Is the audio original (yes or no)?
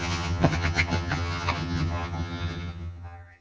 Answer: no